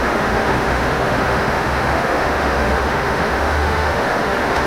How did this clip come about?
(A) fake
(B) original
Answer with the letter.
A